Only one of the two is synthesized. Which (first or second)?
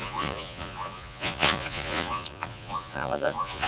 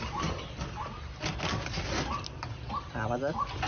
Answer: first